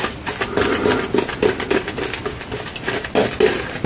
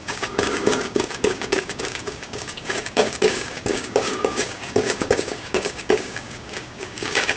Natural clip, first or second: first